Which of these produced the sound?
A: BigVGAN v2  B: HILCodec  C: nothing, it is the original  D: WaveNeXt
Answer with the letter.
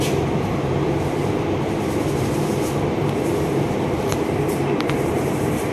A